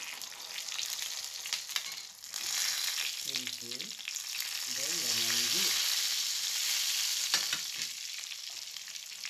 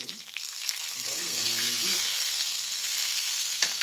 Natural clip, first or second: first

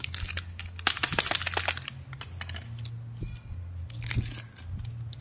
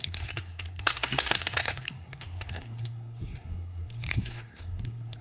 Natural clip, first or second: first